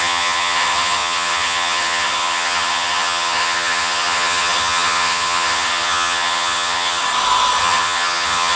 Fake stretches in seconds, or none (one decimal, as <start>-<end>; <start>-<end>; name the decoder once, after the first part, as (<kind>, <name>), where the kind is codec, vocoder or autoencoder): 0.0-7.0 (vocoder, HiFi-GAN); 7.6-8.6